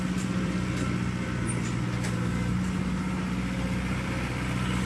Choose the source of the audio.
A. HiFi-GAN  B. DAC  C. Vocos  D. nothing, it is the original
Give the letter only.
D